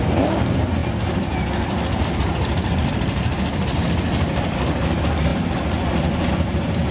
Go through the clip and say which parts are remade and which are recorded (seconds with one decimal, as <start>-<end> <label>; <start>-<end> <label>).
0.0-6.9 recorded